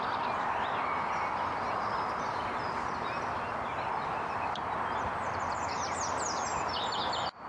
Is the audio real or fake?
real